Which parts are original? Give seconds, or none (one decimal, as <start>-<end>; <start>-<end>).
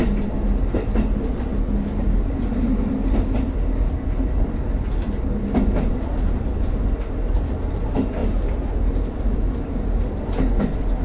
0.0-11.0